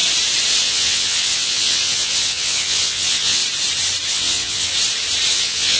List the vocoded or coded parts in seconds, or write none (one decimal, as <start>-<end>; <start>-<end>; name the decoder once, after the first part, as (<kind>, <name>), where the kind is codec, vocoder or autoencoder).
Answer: 0.6-3.4 (vocoder, WaveNeXt); 4.1-4.7; 5.3-5.8